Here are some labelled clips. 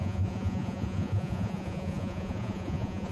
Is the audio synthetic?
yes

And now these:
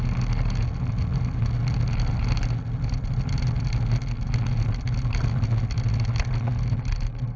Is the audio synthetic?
no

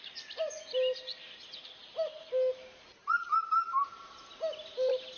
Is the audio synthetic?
no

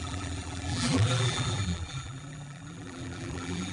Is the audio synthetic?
yes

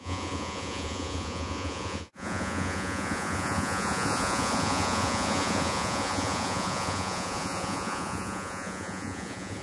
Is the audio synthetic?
yes